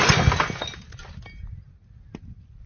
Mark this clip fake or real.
real